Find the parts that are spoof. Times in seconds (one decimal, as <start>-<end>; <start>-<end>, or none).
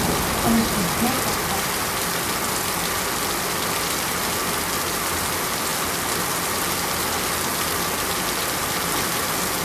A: none